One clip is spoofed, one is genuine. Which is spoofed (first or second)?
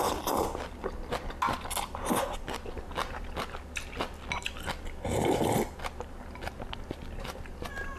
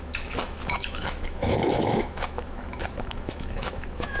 second